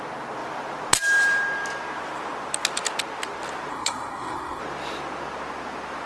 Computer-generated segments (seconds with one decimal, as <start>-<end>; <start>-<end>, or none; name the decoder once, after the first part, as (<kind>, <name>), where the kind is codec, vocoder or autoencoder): 3.7-4.6 (codec, SNAC)